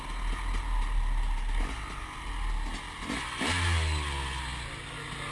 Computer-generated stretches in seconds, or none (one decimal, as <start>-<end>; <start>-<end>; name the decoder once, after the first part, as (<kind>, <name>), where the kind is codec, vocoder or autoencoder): none